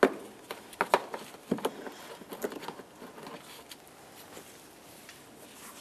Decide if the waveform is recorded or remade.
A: recorded